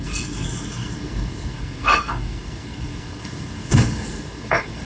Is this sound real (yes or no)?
no